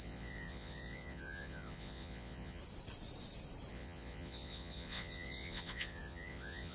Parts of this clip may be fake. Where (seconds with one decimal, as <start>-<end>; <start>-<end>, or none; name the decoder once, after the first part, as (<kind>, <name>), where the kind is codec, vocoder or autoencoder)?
0.0-2.6 (vocoder, Vocos); 3.7-6.7